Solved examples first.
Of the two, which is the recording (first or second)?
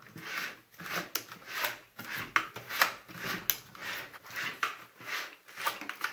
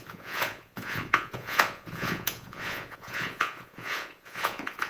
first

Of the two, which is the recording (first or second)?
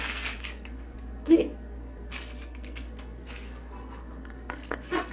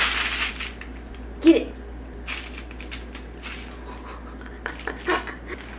second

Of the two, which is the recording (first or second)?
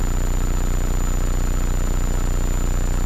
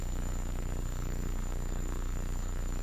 first